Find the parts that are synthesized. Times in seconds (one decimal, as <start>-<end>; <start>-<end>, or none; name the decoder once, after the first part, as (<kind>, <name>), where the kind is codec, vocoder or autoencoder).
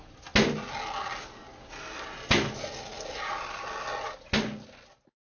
none